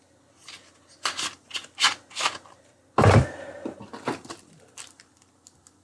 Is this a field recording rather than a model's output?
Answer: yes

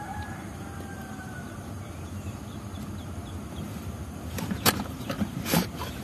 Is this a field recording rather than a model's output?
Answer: no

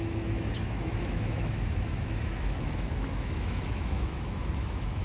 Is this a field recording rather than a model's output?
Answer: no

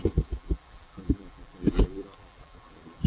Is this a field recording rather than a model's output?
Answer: no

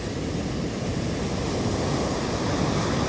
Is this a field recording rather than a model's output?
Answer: yes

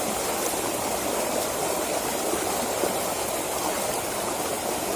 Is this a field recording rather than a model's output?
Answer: yes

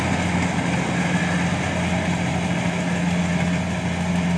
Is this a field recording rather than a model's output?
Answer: yes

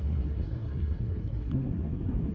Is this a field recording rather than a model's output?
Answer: no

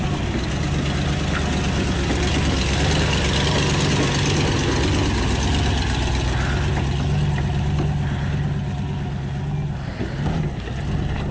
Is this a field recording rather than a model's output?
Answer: yes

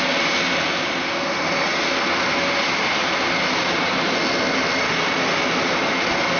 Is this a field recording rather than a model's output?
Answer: yes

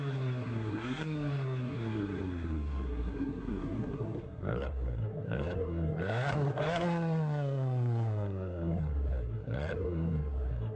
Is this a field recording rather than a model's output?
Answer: no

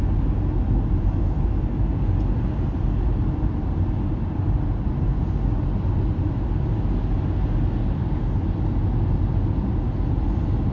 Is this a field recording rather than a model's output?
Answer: yes